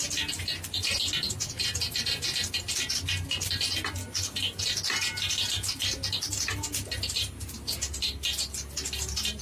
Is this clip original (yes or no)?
yes